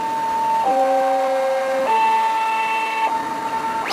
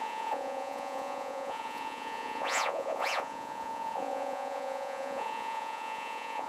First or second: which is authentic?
first